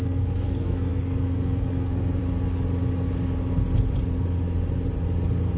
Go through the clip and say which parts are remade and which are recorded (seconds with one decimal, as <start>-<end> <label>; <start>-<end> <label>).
0.0-2.2 remade; 2.2-5.6 recorded